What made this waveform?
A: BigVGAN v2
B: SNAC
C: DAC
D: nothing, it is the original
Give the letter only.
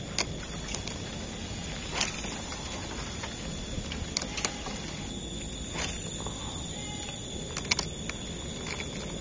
D